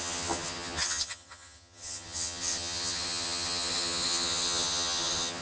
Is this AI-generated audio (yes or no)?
yes